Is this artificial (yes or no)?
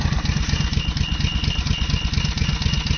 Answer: no